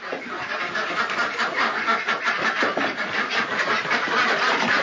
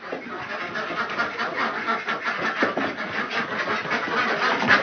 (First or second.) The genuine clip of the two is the second